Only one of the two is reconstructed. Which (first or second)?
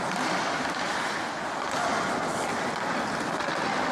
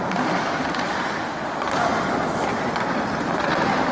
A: second